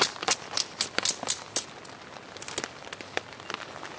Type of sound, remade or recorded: recorded